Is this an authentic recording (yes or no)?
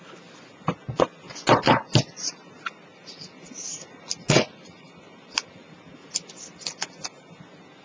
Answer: yes